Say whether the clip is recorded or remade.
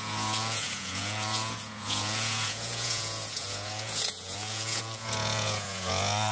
remade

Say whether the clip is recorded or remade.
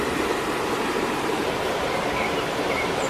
remade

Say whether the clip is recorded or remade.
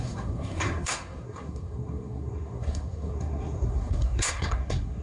remade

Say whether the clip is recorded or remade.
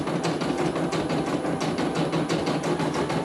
recorded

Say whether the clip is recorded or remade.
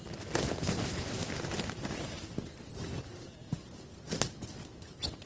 recorded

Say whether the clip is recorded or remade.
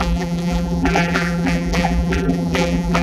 remade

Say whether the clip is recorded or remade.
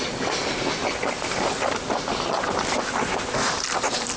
recorded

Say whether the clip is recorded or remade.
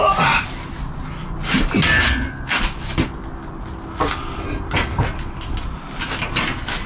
recorded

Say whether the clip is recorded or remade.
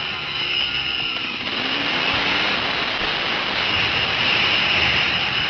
recorded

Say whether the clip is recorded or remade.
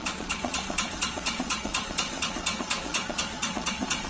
remade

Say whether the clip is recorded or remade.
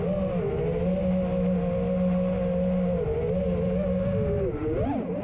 recorded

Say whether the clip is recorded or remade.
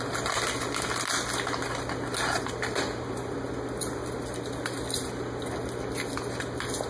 recorded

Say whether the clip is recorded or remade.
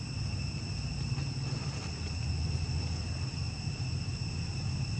recorded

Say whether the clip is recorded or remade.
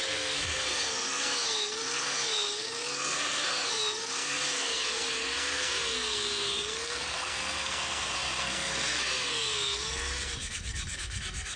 remade